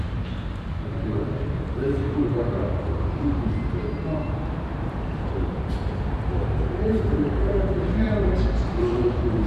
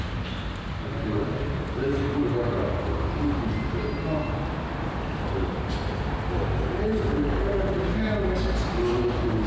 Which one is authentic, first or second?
second